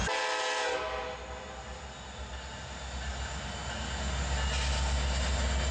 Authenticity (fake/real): real